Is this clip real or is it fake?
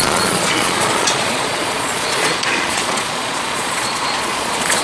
fake